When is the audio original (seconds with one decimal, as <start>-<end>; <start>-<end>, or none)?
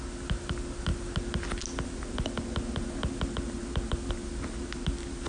0.0-5.3